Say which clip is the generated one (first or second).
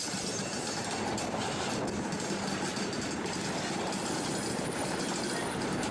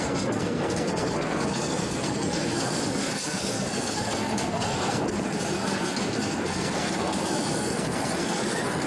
second